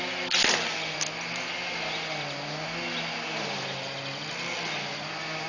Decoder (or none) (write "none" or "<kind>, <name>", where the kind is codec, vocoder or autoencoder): none